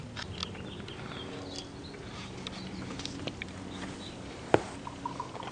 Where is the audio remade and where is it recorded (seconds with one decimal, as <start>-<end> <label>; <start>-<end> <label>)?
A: 0.0-5.5 recorded